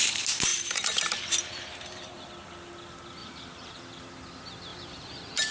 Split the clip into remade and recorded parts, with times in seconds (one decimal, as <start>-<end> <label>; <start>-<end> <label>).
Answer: 0.0-0.5 recorded; 0.5-2.3 remade; 2.3-3.2 recorded; 3.2-3.8 remade; 3.8-4.7 recorded; 4.7-5.5 remade